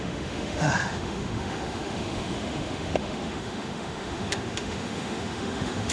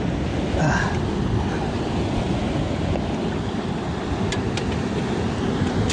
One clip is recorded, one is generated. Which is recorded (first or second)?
second